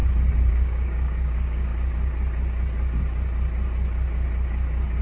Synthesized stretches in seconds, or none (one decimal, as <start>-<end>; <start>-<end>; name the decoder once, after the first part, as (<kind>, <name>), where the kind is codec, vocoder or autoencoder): 0.5-1.7 (codec, DAC)